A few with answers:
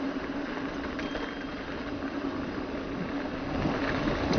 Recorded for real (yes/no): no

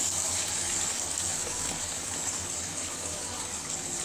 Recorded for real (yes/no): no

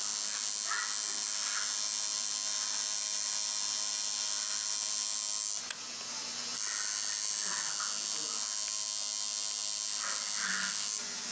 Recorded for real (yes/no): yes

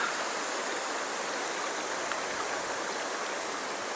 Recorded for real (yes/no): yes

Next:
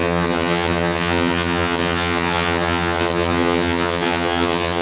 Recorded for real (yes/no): no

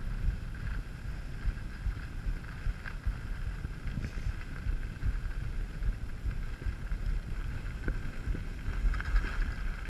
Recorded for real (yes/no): yes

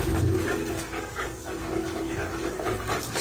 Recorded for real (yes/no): no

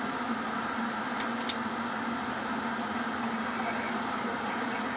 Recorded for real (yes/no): yes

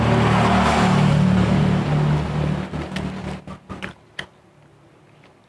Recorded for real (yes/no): yes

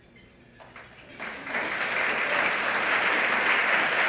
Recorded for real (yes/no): yes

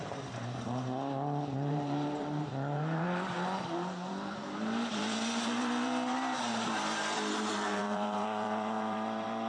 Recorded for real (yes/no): no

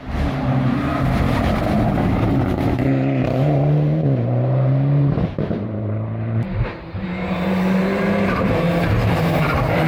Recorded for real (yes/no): no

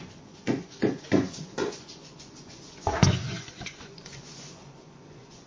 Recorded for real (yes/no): no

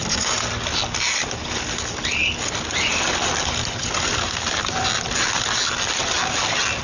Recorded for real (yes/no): yes